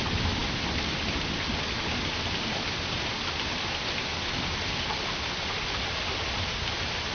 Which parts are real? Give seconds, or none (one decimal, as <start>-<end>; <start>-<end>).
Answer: 0.0-7.1